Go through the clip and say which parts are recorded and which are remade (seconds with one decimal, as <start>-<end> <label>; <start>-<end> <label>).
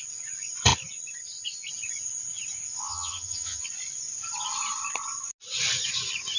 0.0-2.9 recorded; 2.9-3.6 remade; 3.6-6.4 recorded